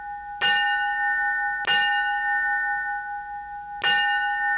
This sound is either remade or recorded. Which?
recorded